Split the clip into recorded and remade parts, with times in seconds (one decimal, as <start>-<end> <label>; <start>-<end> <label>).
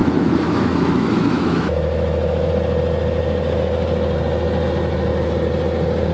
0.0-2.5 remade; 2.5-6.1 recorded